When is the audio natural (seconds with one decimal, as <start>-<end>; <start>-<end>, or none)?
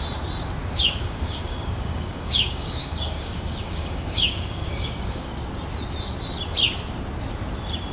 0.0-0.6; 5.3-7.9